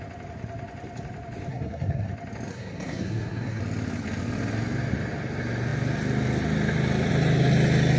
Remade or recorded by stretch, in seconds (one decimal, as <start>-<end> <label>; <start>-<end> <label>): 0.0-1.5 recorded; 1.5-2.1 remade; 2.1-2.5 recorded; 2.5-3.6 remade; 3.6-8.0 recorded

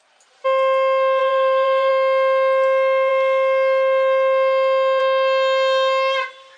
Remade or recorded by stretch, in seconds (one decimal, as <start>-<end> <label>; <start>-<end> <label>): 0.0-1.2 recorded; 1.2-1.9 remade; 1.9-6.6 recorded

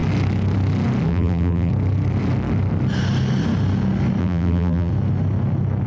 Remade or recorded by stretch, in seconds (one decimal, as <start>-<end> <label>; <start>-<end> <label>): 0.0-1.1 recorded; 1.1-1.7 remade; 1.7-4.2 recorded; 4.2-4.9 remade; 4.9-5.9 recorded